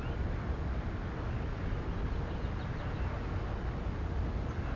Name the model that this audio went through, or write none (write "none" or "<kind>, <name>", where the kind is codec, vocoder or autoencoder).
none